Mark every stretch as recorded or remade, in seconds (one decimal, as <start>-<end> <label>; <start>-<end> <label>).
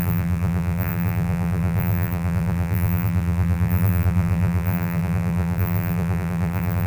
0.0-6.9 remade